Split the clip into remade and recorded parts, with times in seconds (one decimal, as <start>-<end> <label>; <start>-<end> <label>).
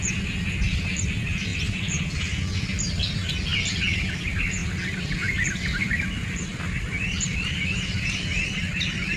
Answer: 0.0-9.2 recorded